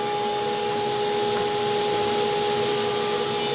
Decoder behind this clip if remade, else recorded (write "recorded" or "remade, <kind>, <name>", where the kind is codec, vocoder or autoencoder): recorded